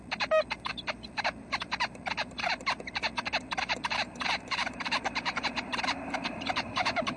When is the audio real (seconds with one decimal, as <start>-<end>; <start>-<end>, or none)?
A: none